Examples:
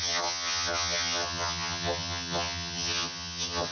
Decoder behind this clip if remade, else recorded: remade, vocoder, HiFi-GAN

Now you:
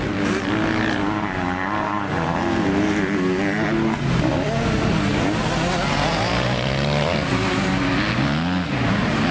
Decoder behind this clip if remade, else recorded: recorded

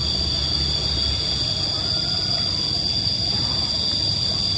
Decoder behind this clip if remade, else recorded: recorded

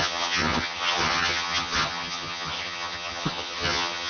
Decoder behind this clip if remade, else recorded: remade, vocoder, HiFi-GAN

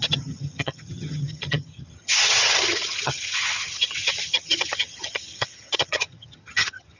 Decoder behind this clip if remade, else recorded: remade, vocoder, HiFi-GAN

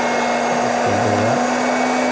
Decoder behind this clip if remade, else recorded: recorded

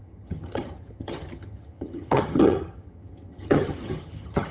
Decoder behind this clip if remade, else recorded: remade, vocoder, HiFi-GAN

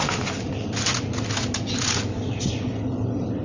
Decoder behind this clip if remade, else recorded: recorded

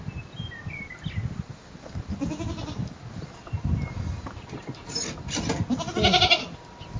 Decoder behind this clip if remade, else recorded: recorded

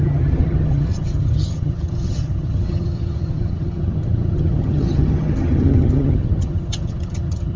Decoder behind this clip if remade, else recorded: remade, vocoder, HiFi-GAN